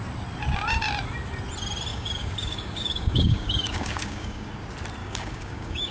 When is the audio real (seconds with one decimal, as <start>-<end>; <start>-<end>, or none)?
0.0-1.9; 4.5-5.0